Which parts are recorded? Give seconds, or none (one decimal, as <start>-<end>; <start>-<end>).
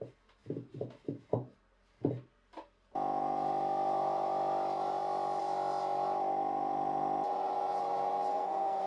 0.0-8.3